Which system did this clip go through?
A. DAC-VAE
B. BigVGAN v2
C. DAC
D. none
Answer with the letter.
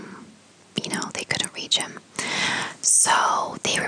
D